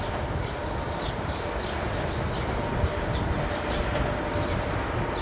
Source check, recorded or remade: recorded